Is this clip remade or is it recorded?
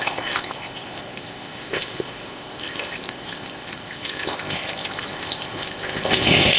remade